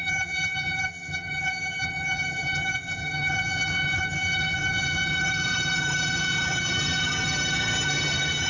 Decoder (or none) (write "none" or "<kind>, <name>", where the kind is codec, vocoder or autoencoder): vocoder, HiFi-GAN